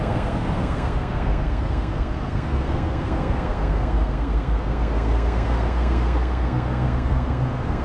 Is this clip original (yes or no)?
no